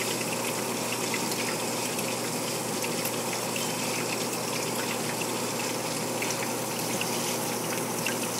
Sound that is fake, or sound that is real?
real